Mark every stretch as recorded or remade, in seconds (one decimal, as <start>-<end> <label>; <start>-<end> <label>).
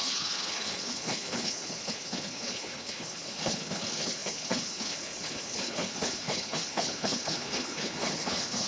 0.0-8.7 remade